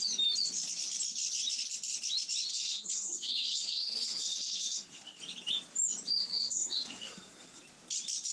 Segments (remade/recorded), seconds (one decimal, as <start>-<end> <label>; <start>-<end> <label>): 0.0-2.5 recorded; 2.5-5.2 remade; 5.2-6.2 recorded; 6.2-7.6 remade; 7.6-8.3 recorded